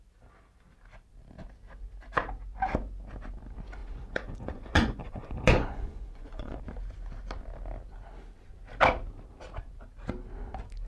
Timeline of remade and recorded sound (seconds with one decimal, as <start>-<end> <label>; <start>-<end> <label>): 0.0-3.8 recorded; 3.8-6.6 remade; 6.6-10.9 recorded